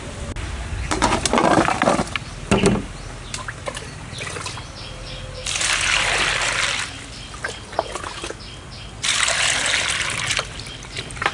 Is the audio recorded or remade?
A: recorded